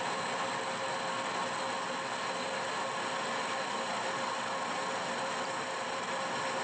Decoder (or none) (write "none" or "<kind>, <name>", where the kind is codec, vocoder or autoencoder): none